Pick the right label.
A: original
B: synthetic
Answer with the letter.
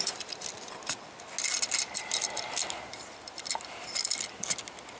A